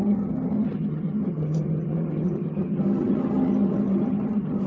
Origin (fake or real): fake